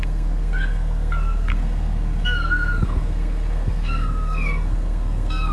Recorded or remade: remade